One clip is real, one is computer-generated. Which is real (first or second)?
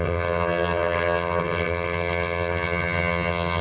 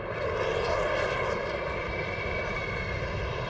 second